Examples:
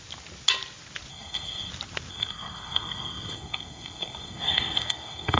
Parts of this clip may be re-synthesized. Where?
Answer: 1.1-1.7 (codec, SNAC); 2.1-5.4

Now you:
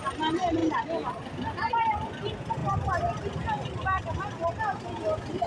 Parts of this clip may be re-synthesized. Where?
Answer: none

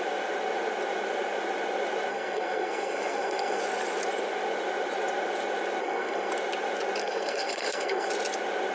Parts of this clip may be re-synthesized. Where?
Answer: 2.1-3.6 (codec, SNAC); 5.8-6.3; 7.0-8.1

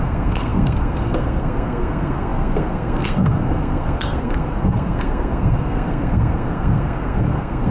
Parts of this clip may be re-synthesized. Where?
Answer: 0.0-7.7 (codec, SNAC)